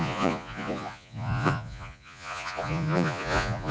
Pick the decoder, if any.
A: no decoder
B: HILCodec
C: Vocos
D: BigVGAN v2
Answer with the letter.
C